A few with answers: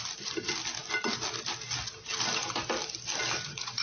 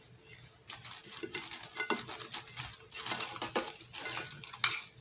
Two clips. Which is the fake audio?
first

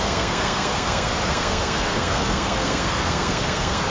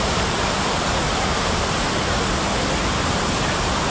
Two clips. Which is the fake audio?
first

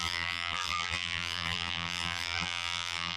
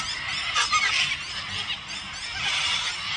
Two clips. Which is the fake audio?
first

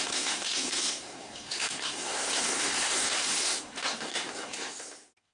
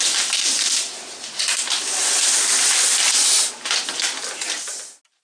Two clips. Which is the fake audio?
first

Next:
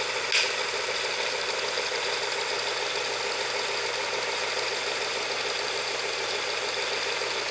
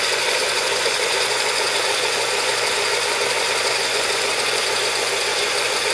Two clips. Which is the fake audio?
second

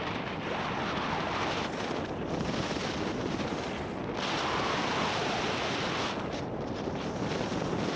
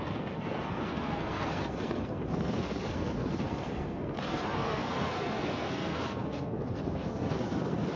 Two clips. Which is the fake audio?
second